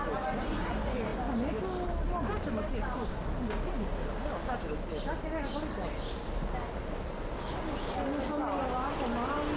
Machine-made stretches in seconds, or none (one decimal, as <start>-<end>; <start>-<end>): none